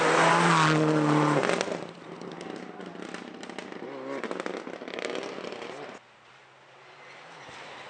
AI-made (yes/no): no